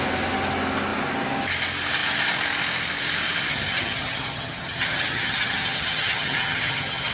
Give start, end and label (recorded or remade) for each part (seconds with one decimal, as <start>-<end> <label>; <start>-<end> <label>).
0.0-3.5 recorded; 3.5-7.1 remade